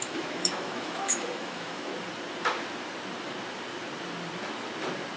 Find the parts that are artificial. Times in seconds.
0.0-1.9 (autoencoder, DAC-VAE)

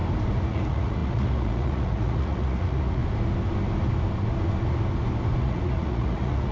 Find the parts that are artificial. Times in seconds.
0.5-3.0 (vocoder, Vocos); 5.4-6.5

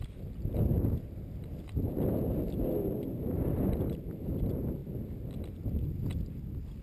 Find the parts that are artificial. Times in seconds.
none

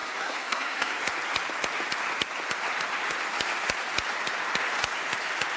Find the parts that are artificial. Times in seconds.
0.0-1.0 (codec, SNAC)

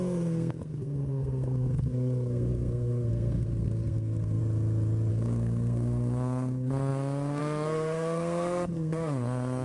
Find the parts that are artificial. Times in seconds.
0.0-4.4 (codec, SNAC); 5.1-9.6